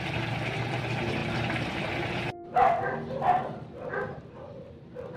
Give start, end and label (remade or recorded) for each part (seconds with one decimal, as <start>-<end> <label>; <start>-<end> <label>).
0.0-5.2 remade

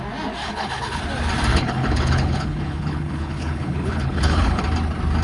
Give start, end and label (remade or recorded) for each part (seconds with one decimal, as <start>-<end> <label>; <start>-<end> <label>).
0.0-0.4 recorded; 0.4-1.0 remade; 1.0-1.5 recorded; 1.5-4.6 remade; 4.6-5.2 recorded

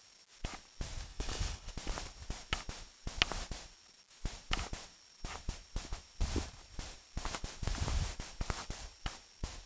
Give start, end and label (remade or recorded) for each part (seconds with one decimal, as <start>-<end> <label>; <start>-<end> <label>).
0.0-1.1 recorded; 1.1-1.7 remade; 1.7-9.7 recorded

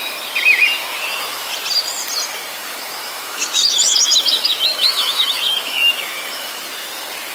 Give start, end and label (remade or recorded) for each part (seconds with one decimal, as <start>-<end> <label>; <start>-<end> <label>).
0.0-0.8 recorded; 0.8-1.5 remade; 1.5-2.6 recorded; 2.6-6.6 remade; 6.6-7.3 recorded

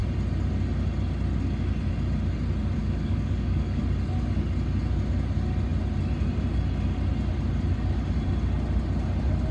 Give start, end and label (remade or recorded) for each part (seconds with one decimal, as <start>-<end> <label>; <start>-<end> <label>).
0.0-2.8 recorded; 2.8-3.8 remade; 3.8-9.5 recorded